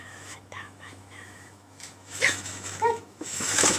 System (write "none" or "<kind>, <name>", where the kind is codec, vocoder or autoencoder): autoencoder, DAC-VAE